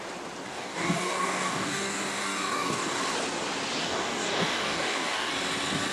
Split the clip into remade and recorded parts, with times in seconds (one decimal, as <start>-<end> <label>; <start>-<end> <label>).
0.0-0.5 recorded; 0.5-3.0 remade; 3.0-3.8 recorded; 3.8-5.3 remade; 5.3-5.9 recorded